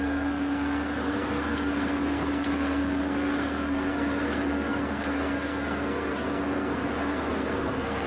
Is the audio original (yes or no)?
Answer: no